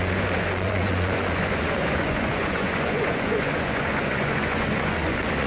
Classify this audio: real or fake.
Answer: fake